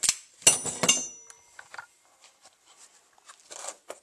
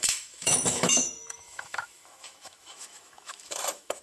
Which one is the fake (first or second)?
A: second